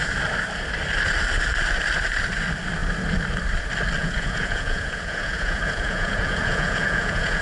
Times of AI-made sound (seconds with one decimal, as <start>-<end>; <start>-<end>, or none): 4.0-7.4

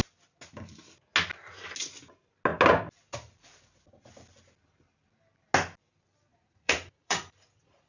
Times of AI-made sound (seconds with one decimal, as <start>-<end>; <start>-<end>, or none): 6.3-7.9

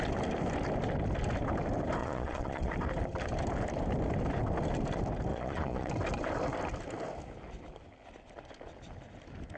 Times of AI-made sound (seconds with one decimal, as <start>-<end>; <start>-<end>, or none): 2.0-2.7; 5.3-5.9

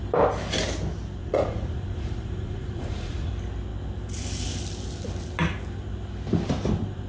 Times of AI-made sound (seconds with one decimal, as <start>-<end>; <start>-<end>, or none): 1.2-3.3

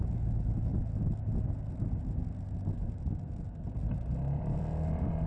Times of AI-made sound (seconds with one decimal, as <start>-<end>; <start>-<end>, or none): none

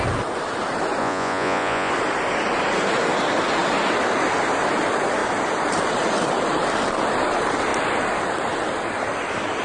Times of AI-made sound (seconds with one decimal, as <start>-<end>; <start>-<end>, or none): 1.0-1.9

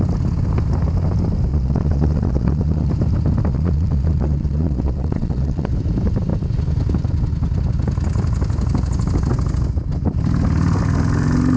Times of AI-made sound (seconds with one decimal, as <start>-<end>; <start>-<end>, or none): 1.5-2.9; 3.5-5.7